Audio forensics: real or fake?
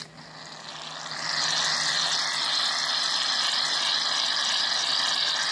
real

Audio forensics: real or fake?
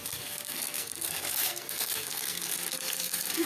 fake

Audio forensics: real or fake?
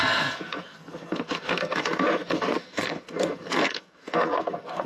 fake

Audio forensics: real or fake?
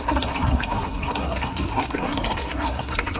fake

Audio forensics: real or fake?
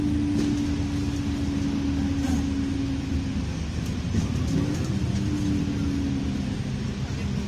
real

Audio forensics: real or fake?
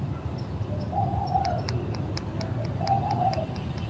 real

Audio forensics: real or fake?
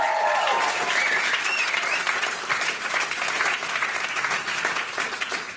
real